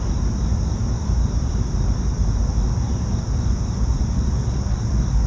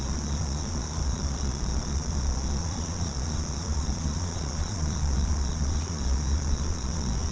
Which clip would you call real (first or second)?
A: first